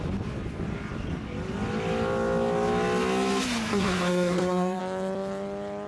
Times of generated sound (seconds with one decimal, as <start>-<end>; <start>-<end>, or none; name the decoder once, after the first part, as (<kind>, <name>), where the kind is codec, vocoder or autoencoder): 3.7-4.8 (codec, SNAC)